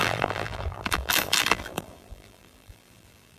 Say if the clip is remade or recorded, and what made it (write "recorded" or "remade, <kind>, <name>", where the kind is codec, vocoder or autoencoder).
remade, vocoder, BigVGAN v2